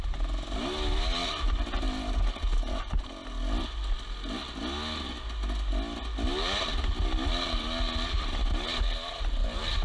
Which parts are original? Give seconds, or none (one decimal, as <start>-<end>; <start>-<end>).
0.0-9.8